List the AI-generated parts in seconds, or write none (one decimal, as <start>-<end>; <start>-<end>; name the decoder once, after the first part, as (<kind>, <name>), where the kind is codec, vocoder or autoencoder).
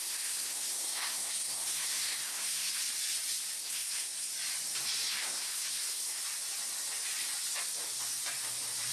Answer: 0.0-2.8 (codec, SNAC); 3.6-4.3; 5.1-6.2